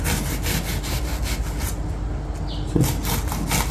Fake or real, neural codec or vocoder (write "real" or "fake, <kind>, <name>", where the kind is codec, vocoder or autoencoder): real